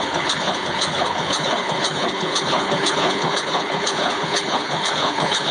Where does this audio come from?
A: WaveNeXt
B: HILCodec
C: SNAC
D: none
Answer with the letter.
B